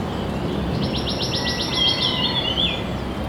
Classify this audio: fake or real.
real